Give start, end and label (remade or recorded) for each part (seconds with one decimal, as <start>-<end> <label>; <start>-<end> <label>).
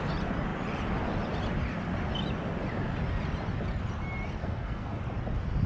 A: 0.0-4.4 recorded; 4.4-5.0 remade; 5.0-5.7 recorded